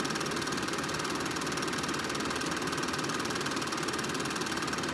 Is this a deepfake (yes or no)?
no